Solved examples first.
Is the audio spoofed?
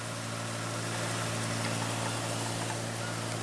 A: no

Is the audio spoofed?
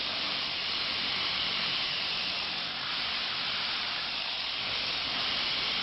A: yes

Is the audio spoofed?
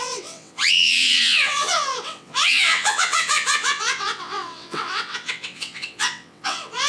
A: yes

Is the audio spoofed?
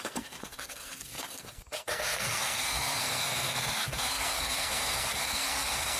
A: yes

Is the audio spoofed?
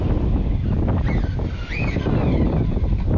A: no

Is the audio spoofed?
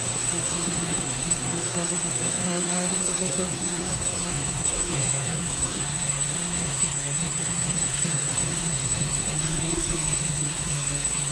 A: yes